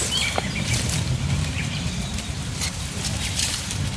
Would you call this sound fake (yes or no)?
yes